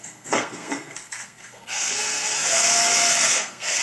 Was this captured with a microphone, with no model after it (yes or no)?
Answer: no